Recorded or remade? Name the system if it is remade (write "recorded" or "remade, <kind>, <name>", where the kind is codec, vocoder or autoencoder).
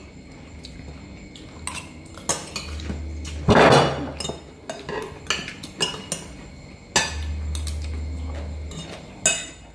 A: recorded